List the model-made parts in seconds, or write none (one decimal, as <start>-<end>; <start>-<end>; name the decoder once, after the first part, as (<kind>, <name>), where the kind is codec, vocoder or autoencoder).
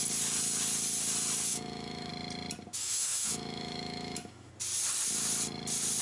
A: 1.5-2.1 (autoencoder, DAC-VAE); 2.8-4.5